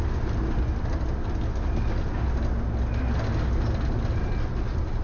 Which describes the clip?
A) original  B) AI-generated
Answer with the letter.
A